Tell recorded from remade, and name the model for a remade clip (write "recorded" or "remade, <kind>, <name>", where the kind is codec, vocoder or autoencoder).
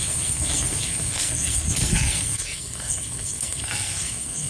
remade, codec, SNAC